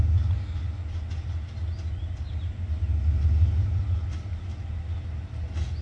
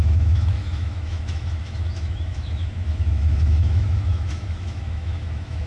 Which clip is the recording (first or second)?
first